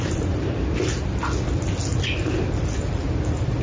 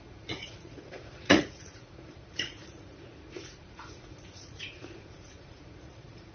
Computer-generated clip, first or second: second